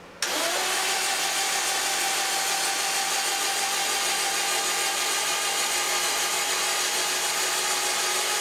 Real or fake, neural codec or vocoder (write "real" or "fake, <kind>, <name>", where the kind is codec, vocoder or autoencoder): real